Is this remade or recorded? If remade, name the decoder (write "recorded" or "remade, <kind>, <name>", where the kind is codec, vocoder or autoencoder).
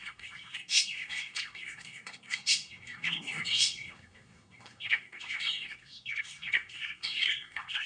remade, codec, SNAC